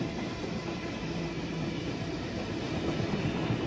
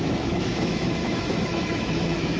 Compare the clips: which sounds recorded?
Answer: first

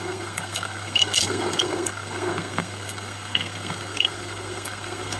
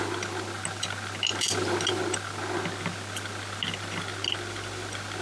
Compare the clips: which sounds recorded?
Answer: second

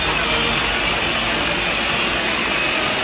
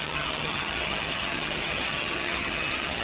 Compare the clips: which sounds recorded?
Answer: first